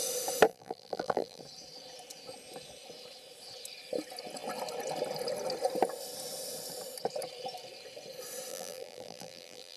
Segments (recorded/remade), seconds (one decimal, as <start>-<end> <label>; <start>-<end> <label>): 0.0-0.5 recorded; 0.5-1.4 remade; 1.4-8.5 recorded; 8.5-9.8 remade